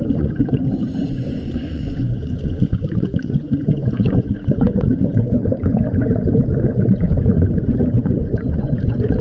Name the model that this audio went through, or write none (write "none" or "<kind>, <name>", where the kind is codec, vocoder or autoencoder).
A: vocoder, Vocos